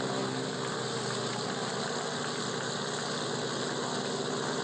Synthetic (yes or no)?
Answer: no